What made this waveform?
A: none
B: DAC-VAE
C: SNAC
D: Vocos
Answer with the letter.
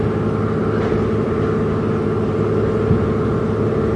A